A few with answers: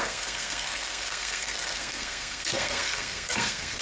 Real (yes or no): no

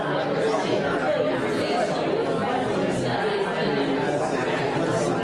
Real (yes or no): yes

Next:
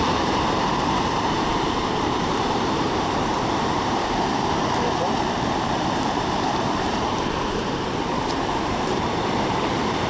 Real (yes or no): no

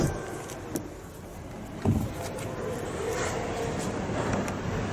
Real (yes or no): yes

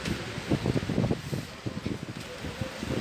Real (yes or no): yes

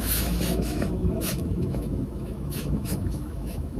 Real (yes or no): no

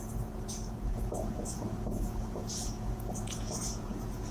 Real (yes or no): no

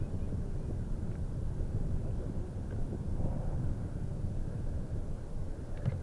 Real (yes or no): yes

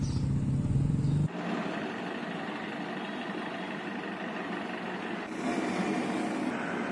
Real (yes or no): yes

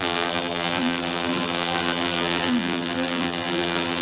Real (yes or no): no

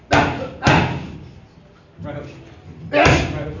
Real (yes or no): yes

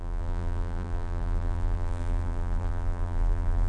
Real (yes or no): no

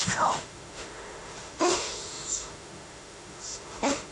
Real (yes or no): no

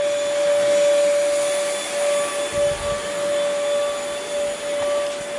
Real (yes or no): yes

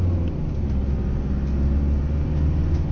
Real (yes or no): yes